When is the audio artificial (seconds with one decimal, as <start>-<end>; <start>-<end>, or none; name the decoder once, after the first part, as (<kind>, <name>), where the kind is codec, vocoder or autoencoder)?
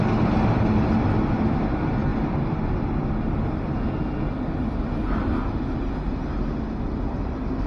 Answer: none